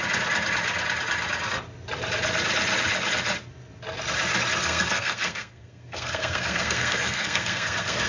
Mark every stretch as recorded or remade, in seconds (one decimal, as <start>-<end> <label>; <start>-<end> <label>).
0.0-4.6 recorded; 4.6-8.1 remade

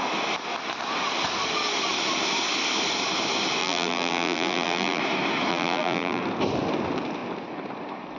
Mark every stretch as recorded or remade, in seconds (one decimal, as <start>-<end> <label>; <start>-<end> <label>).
0.0-3.6 recorded; 3.6-5.0 remade; 5.0-5.5 recorded; 5.5-6.2 remade; 6.2-8.2 recorded

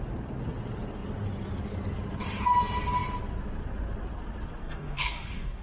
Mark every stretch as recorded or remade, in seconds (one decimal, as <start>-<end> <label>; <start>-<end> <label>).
0.0-4.6 recorded; 4.6-5.6 remade

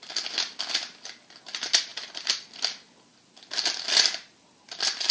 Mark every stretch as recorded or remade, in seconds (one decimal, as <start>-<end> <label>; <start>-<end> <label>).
0.0-5.1 recorded